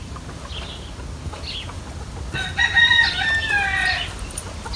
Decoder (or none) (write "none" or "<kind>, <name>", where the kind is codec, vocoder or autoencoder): none